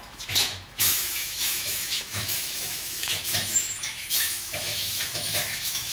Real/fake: fake